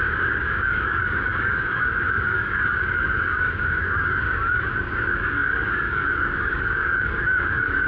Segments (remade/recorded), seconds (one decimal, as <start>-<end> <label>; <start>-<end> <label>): 0.0-7.9 remade